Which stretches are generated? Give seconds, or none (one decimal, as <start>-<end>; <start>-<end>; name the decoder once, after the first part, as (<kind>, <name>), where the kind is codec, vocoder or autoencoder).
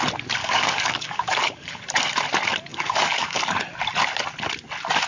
0.4-1.8 (codec, DAC); 2.7-3.4